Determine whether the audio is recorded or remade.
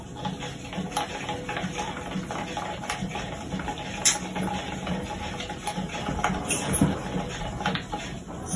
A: recorded